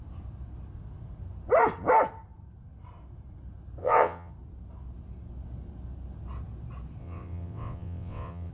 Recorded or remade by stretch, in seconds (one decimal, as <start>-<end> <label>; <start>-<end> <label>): 0.0-3.8 recorded; 3.8-4.3 remade; 4.3-7.0 recorded; 7.0-8.5 remade